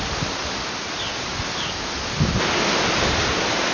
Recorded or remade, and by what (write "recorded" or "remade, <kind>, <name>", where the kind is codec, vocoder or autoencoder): recorded